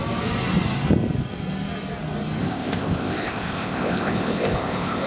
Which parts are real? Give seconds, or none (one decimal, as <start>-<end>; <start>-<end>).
0.0-2.4